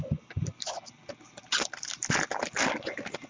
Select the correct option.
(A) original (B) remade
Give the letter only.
A